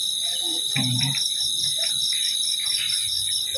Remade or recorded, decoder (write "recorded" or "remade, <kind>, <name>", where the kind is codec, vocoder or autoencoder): recorded